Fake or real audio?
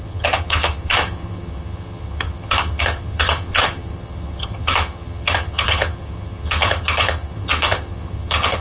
fake